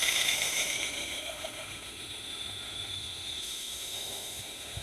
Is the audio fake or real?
fake